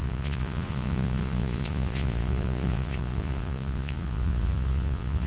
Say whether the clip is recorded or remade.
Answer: remade